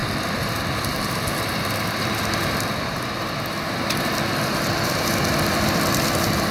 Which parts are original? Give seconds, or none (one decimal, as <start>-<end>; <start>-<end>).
0.0-6.5